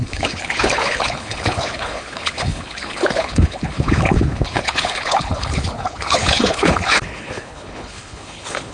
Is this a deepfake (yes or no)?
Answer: yes